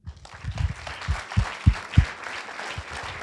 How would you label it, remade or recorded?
recorded